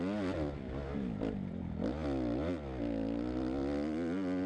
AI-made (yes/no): no